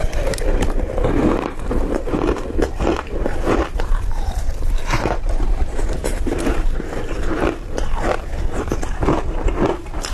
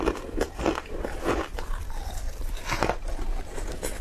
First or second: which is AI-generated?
first